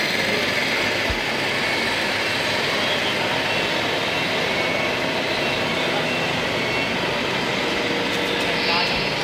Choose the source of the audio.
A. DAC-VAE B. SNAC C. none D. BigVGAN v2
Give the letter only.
C